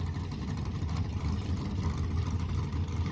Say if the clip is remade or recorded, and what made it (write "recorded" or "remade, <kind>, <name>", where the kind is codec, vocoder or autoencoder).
remade, vocoder, BigVGAN v2